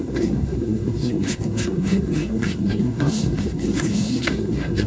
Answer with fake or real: fake